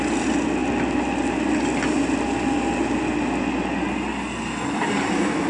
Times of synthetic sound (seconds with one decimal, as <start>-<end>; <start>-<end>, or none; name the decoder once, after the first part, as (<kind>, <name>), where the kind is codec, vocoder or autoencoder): none